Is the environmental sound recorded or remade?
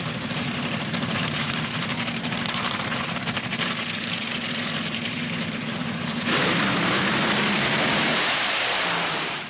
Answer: remade